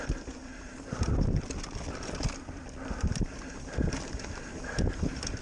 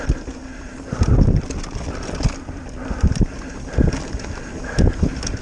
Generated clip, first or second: first